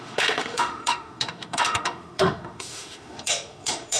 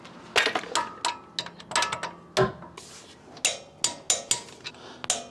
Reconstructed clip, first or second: first